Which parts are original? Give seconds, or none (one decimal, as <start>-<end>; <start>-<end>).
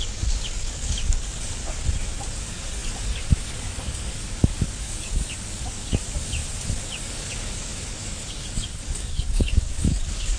1.6-2.4; 6.4-7.0